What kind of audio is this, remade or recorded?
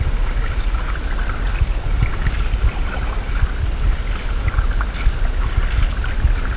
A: recorded